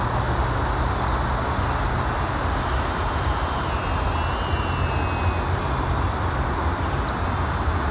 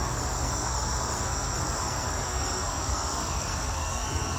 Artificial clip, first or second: second